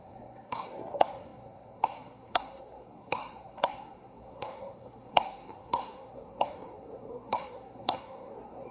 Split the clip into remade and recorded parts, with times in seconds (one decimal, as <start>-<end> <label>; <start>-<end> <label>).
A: 0.0-8.7 remade